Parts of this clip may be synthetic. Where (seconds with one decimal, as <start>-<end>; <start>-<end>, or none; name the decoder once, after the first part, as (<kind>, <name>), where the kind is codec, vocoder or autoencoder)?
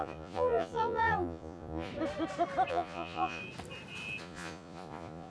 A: 0.0-1.9 (vocoder, Vocos); 2.7-3.4; 4.2-5.3